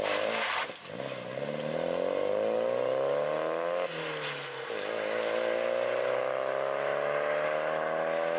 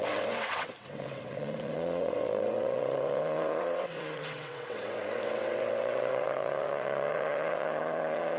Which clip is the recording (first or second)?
first